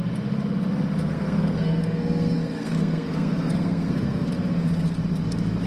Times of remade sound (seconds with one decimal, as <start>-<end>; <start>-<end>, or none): 1.0-4.3